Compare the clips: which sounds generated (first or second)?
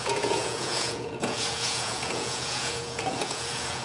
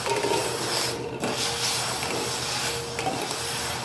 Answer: first